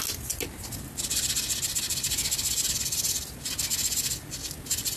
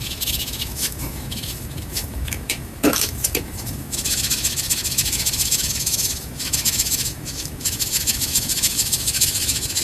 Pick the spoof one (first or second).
second